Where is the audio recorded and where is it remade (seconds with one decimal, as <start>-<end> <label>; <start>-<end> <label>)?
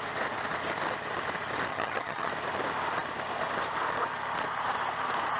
0.0-1.7 recorded; 1.7-2.3 remade; 2.3-5.4 recorded